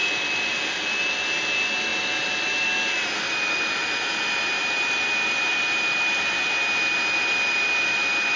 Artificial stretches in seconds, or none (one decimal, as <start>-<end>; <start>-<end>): none